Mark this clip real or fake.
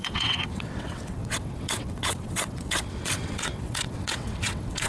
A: fake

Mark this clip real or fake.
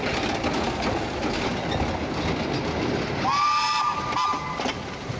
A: real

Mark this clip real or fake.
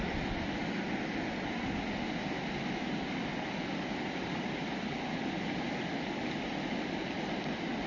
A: real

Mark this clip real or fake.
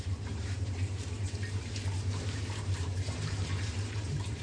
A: fake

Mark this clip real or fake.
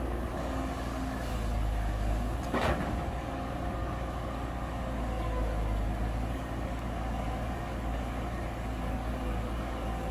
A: fake